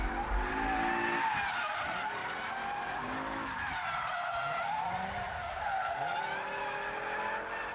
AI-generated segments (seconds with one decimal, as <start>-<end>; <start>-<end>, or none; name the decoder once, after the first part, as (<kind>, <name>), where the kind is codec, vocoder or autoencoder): none